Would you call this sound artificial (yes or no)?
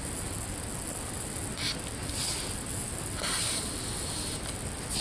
no